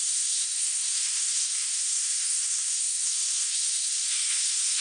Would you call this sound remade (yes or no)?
yes